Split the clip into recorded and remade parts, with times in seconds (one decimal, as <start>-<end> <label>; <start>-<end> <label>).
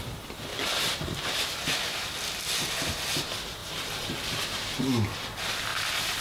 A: 0.0-0.5 recorded; 0.5-1.8 remade; 1.8-3.6 recorded; 3.6-4.8 remade; 4.8-5.7 recorded; 5.7-6.2 remade